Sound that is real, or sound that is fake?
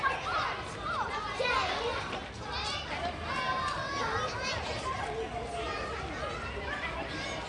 real